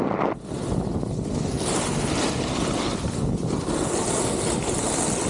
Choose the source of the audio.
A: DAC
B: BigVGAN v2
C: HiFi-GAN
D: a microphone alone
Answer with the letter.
D